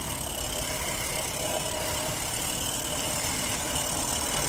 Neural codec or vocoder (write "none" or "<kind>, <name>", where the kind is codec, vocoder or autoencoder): none